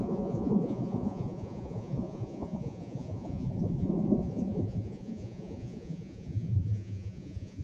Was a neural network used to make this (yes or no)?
yes